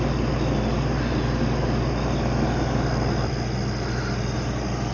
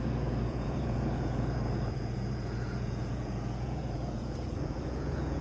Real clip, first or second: first